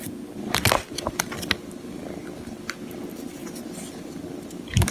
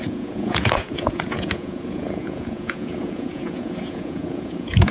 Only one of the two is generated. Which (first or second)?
second